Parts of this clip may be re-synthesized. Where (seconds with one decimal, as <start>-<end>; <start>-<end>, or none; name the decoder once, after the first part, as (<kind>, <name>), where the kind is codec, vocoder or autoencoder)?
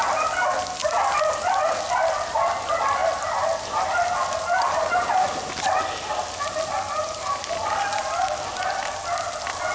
none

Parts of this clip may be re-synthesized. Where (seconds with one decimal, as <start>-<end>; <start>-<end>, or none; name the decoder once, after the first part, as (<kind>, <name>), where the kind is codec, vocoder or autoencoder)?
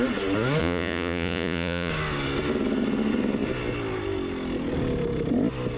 0.6-1.9 (vocoder, Vocos)